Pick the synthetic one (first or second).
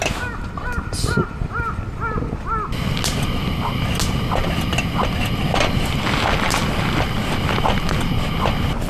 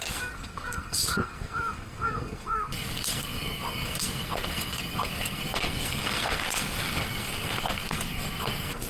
second